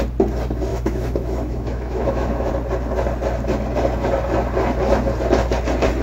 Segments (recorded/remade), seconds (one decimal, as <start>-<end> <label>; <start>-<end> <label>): 0.0-0.7 recorded; 0.7-2.5 remade; 2.5-6.0 recorded